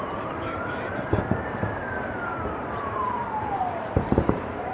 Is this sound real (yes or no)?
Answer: no